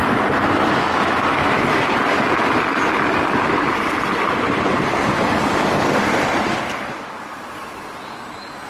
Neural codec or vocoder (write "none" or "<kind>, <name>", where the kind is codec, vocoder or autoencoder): vocoder, BigVGAN v2